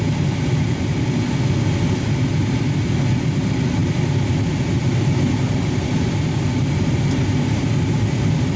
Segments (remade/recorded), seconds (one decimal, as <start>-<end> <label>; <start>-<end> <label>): 0.0-8.6 recorded